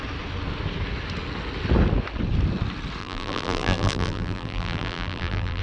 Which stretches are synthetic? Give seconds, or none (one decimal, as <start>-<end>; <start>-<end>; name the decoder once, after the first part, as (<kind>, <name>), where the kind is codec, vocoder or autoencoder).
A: 3.0-5.6 (vocoder, BigVGAN v2)